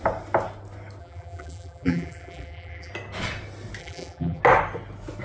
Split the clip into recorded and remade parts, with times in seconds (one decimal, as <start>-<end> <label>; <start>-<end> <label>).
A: 0.0-1.0 recorded; 1.0-2.9 remade; 2.9-3.8 recorded; 3.8-4.4 remade; 4.4-5.2 recorded